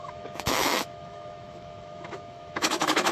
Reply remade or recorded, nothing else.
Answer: remade